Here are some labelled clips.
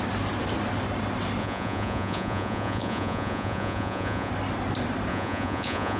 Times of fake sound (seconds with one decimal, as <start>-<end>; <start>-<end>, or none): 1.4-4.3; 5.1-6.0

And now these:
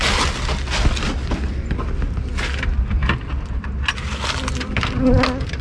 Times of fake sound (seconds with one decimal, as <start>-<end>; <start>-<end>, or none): none

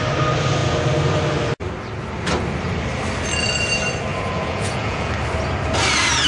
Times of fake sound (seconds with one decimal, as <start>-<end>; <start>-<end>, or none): 4.1-5.1

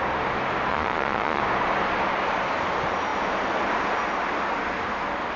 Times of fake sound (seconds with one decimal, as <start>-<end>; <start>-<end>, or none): 0.7-1.4

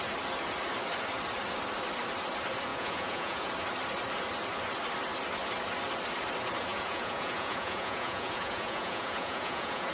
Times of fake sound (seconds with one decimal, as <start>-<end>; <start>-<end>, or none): 2.7-3.5; 6.7-9.9

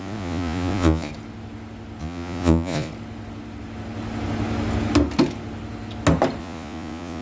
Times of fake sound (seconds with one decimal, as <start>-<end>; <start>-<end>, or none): 0.0-1.1; 2.0-2.9; 6.4-7.2